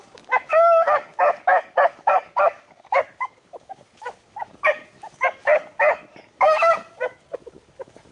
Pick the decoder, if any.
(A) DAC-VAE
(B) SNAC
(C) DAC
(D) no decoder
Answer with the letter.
C